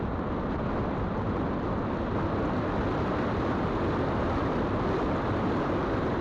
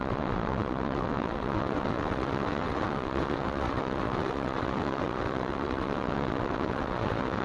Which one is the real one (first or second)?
first